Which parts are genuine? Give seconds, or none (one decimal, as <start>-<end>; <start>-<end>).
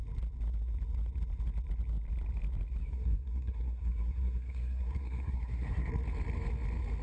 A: 0.0-2.8; 5.9-7.0